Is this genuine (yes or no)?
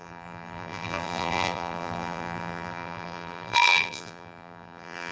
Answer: no